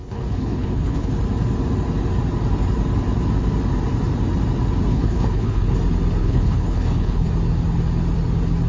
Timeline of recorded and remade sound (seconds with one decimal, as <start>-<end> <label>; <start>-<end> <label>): 0.0-1.1 remade; 1.1-4.9 recorded; 4.9-5.7 remade; 5.7-6.2 recorded; 6.2-7.3 remade; 7.3-8.7 recorded